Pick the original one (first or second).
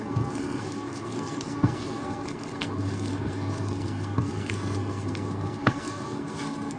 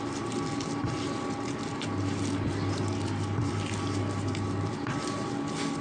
second